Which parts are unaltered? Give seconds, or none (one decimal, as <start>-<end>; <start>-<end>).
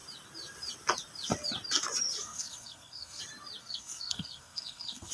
0.0-2.2; 3.2-3.6